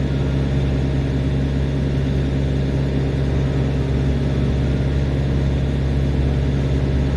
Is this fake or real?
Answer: real